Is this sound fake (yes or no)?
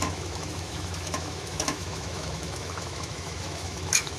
yes